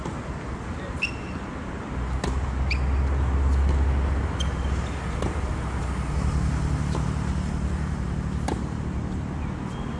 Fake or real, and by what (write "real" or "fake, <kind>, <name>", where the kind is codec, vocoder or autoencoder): real